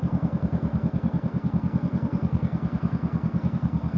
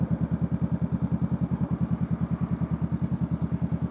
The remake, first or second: first